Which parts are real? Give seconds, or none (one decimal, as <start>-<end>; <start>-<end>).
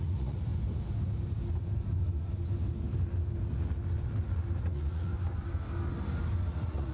0.5-4.6; 5.1-6.5